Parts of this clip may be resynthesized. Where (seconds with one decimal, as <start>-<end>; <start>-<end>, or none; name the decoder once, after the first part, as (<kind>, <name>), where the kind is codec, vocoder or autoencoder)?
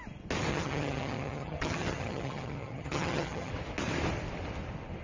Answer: 0.5-3.5 (vocoder, HiFi-GAN)